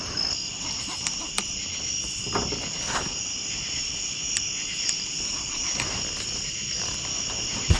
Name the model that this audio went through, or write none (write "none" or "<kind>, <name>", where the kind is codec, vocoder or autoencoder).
none